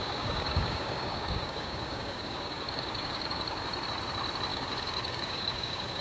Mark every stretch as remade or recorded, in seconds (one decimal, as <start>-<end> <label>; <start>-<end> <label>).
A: 0.0-3.6 remade; 3.6-4.5 recorded; 4.5-6.0 remade